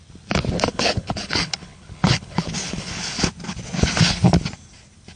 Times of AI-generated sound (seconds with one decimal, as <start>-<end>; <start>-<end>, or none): 0.7-3.3